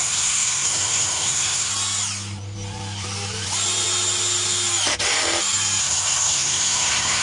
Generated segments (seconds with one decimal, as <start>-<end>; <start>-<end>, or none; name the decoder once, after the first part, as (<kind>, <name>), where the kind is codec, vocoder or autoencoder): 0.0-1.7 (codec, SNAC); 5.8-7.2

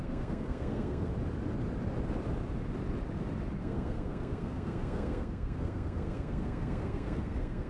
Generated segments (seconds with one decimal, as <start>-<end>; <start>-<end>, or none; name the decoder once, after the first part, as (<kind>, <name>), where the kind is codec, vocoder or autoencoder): 0.0-1.1 (codec, SNAC); 3.6-7.7

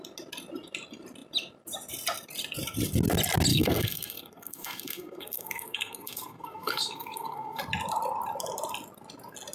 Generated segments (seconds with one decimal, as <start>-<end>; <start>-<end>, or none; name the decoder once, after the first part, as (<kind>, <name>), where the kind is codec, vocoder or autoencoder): 3.5-7.6 (codec, SNAC)